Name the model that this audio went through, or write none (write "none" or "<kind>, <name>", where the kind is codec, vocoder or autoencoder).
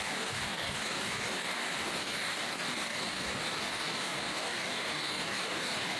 codec, DAC